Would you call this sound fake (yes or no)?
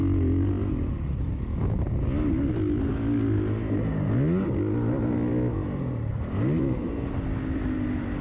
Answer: no